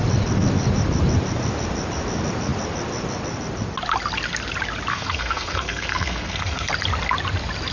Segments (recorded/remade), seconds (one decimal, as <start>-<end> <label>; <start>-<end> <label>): 0.0-4.9 recorded; 4.9-6.7 remade; 6.7-7.7 recorded